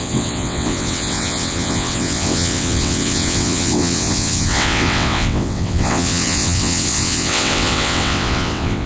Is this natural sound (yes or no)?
no